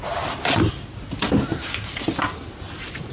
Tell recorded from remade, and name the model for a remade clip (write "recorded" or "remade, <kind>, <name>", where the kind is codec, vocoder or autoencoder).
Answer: recorded